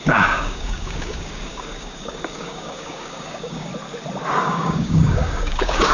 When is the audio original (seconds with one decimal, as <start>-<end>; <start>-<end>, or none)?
3.7-4.4